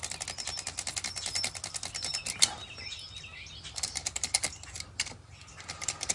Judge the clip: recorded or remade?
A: recorded